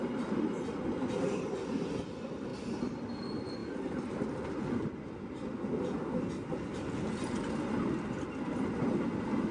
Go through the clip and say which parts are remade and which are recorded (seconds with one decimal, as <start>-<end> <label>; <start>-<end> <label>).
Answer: 0.0-9.5 recorded